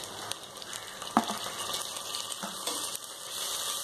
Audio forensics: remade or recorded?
recorded